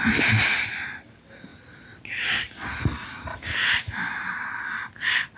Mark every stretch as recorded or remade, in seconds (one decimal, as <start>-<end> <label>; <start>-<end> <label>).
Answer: 0.0-5.4 recorded